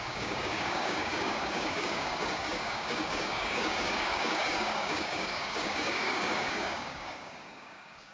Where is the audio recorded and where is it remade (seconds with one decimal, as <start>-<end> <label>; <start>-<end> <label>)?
0.0-8.1 remade